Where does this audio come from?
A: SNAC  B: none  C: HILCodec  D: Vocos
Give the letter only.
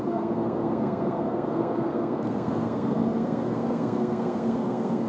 A